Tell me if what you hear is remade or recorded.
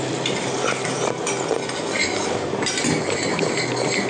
recorded